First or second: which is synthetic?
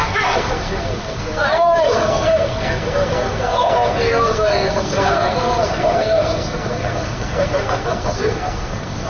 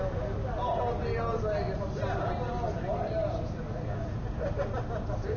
first